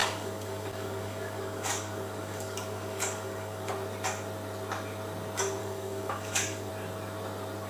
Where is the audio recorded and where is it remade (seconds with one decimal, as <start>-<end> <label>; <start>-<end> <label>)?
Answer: 0.0-3.7 remade; 3.7-5.6 recorded; 5.6-6.7 remade; 6.7-7.7 recorded